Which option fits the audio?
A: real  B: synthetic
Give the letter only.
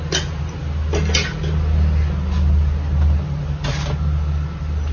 A